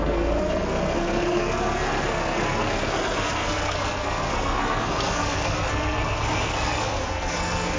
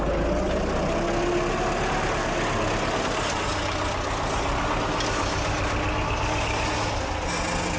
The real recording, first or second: second